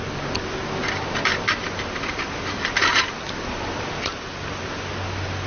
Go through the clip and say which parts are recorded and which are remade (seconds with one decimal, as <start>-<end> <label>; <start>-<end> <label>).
0.0-1.3 recorded; 1.3-4.6 remade; 4.6-5.5 recorded